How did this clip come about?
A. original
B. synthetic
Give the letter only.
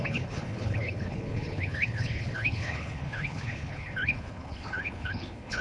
B